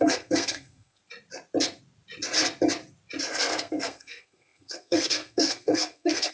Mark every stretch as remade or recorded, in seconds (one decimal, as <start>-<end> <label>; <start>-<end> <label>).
0.0-1.0 remade; 1.0-3.3 recorded; 3.3-6.3 remade